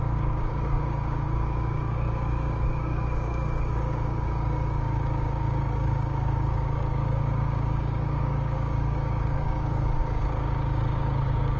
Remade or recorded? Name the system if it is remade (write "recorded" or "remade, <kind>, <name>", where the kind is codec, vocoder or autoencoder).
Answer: remade, codec, DAC